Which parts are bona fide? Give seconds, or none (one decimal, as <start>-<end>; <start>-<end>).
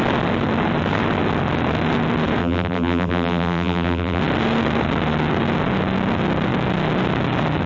0.0-2.4; 4.2-7.7